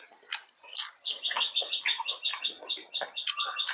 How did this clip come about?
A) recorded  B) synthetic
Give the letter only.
A